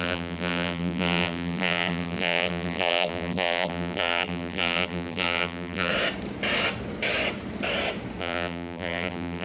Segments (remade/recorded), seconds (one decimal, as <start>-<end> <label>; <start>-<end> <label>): 0.0-5.9 remade; 5.9-8.2 recorded; 8.2-9.4 remade